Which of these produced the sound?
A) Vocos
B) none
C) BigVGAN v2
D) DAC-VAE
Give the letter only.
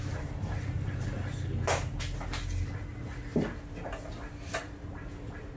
B